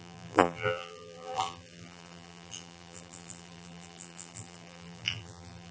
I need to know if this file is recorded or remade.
remade